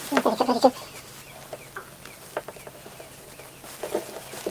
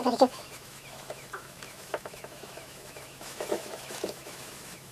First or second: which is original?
first